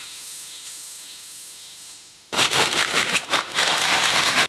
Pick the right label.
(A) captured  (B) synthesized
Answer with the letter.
B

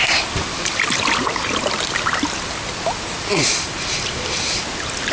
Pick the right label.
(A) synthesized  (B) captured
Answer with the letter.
B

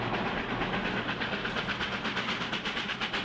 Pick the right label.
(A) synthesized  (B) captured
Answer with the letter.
B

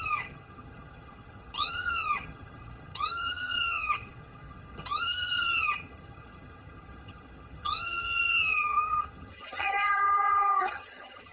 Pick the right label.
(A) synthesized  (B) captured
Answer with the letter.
A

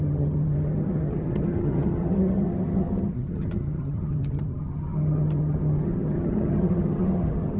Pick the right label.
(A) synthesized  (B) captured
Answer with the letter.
A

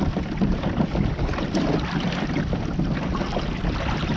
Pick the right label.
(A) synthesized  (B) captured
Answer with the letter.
B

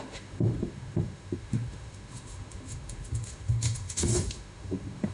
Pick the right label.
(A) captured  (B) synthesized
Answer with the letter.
B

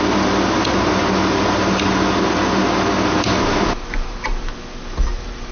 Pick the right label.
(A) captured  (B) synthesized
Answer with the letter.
A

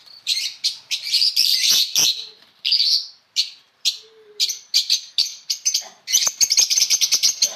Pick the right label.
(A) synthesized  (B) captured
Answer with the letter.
A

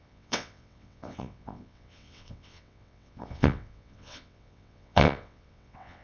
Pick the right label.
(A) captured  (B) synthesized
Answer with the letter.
B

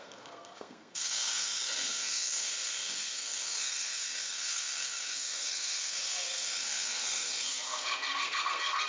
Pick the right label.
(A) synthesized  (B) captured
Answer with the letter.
A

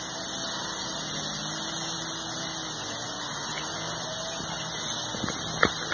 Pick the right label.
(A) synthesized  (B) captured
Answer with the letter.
B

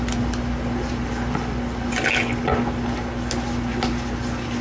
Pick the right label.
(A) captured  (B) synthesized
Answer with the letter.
A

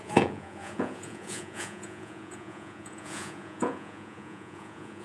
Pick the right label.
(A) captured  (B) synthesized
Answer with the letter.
B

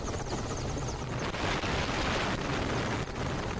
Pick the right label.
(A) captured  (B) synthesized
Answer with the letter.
A